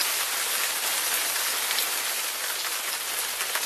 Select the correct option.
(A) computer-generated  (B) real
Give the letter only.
B